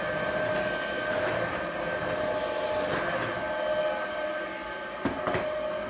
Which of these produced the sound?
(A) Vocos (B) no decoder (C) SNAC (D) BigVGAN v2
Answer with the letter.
B